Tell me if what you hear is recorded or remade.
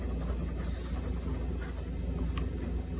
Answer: recorded